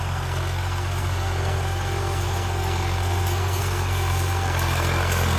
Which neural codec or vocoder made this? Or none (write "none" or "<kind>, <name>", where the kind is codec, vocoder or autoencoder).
codec, SNAC